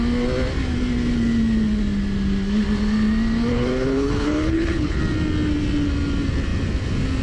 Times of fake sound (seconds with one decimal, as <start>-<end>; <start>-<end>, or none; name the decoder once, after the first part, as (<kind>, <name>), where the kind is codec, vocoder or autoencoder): 3.5-5.0 (codec, HILCodec)